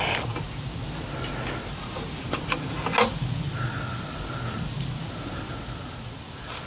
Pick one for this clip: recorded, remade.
recorded